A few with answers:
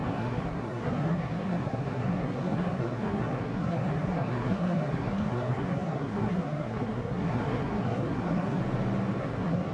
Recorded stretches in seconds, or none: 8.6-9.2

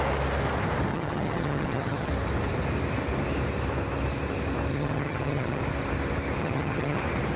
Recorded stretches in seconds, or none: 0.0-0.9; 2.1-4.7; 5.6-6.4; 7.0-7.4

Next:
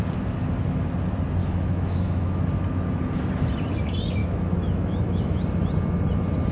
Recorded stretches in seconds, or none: 0.0-1.4; 2.4-4.2; 5.4-6.5